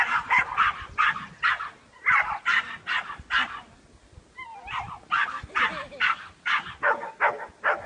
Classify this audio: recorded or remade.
recorded